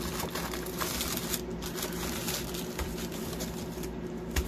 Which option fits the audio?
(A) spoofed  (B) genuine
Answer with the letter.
B